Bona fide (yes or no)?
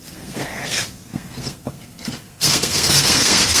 no